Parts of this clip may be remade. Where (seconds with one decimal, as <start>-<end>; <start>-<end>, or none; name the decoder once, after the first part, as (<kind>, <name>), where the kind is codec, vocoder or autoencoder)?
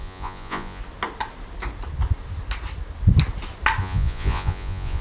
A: 0.0-0.8 (vocoder, Vocos); 3.8-5.0